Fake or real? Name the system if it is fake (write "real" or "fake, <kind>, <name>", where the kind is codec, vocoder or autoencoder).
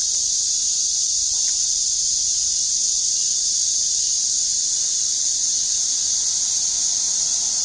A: real